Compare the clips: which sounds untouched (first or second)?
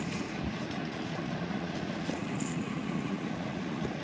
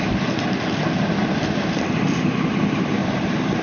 second